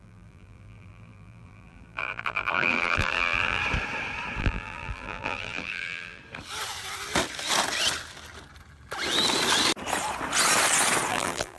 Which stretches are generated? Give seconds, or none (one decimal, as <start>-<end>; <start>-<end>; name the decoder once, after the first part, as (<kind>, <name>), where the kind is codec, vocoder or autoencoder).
0.0-3.6 (vocoder, BigVGAN v2); 4.4-6.2; 11.1-11.6